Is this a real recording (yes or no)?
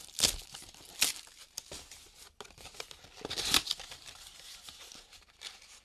yes